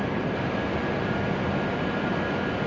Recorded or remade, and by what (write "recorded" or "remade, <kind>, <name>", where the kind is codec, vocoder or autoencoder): recorded